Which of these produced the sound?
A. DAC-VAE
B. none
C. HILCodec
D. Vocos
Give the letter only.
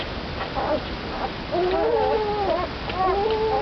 B